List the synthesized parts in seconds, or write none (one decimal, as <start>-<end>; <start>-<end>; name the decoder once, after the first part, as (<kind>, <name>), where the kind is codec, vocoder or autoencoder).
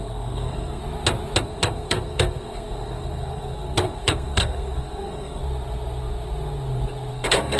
0.0-0.8 (codec, SNAC); 1.4-5.4; 7.1-7.6